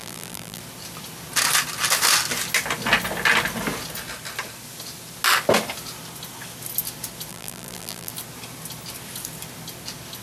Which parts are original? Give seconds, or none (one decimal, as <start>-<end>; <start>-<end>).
0.6-7.3; 8.1-10.2